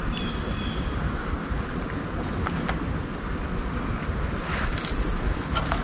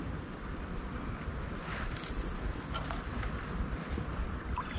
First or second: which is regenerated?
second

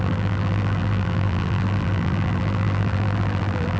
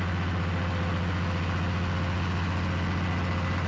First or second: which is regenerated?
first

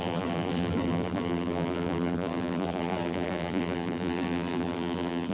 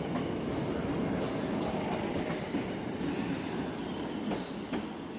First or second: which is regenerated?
first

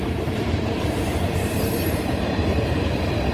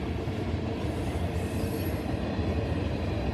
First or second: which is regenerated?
first